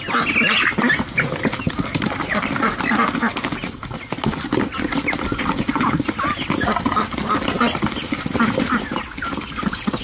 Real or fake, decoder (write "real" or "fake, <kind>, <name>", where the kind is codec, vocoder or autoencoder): real